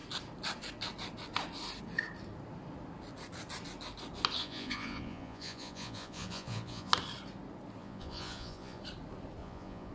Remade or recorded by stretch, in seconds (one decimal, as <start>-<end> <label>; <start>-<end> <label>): 0.0-4.4 recorded; 4.4-6.9 remade; 6.9-7.8 recorded; 7.8-8.8 remade; 8.8-9.4 recorded; 9.4-9.9 remade